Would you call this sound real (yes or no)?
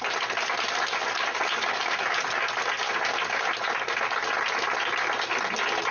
yes